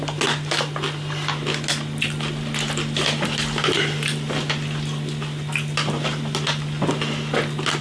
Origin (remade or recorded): recorded